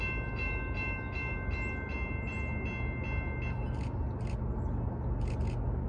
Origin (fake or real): real